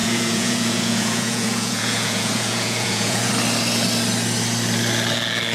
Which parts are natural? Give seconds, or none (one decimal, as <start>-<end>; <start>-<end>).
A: 3.3-5.5